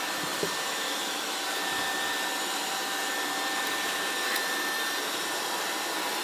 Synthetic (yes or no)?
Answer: yes